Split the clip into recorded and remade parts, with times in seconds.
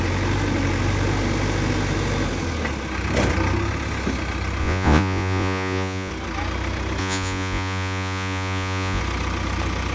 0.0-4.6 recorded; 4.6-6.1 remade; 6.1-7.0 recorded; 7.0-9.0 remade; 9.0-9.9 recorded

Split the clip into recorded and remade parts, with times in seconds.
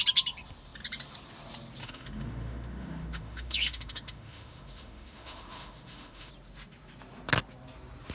0.0-1.8 recorded; 1.8-6.3 remade; 6.3-8.1 recorded